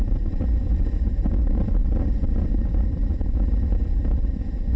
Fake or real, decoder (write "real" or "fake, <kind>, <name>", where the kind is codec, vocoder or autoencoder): fake, vocoder, Vocos